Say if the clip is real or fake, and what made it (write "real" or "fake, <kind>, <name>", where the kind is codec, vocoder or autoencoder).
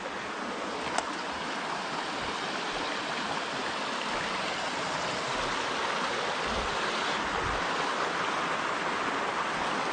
real